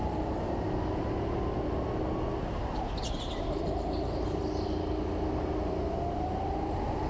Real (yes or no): yes